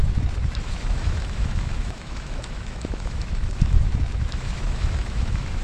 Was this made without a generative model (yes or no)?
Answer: no